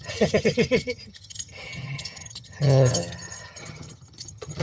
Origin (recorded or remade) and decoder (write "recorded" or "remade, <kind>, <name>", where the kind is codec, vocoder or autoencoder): remade, vocoder, HiFi-GAN